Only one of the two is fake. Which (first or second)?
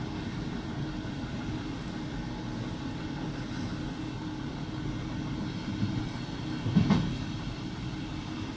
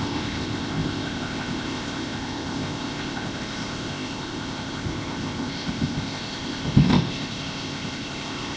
second